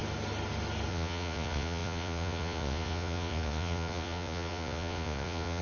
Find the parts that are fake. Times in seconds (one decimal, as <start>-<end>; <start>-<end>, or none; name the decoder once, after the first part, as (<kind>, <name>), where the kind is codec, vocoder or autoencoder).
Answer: 0.9-5.6 (vocoder, Vocos)